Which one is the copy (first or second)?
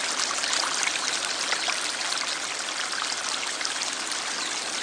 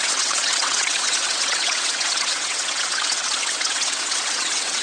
second